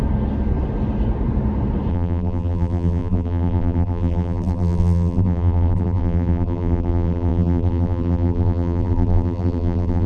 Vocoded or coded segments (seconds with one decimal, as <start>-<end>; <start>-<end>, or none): 1.9-10.1